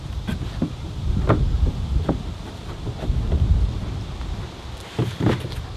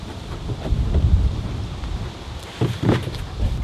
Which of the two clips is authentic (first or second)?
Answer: first